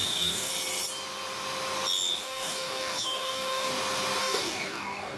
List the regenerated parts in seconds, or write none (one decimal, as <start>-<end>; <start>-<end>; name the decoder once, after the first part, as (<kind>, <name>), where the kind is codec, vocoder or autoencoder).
0.0-0.5 (codec, DAC); 2.2-3.7; 4.2-5.2